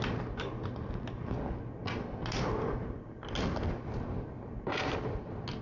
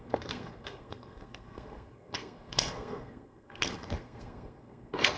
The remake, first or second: second